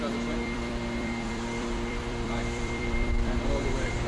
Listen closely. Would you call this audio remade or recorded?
remade